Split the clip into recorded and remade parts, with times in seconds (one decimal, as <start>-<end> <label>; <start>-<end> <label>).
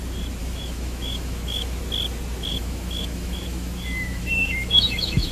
0.0-0.4 recorded; 0.4-1.8 remade; 1.8-2.5 recorded; 2.5-5.3 remade